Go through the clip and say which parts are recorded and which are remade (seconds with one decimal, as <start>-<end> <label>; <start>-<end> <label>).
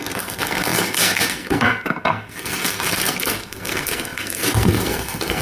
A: 0.0-5.4 remade